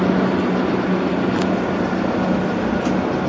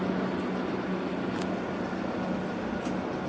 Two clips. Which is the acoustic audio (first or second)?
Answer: second